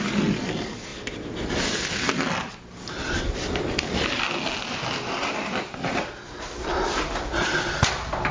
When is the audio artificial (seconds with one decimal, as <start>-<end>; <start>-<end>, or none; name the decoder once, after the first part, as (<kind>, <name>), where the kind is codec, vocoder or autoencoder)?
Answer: 5.2-5.9 (vocoder, BigVGAN v2); 6.7-7.8